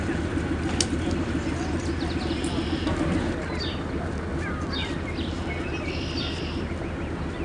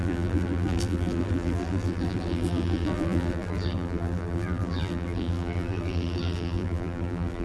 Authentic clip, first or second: first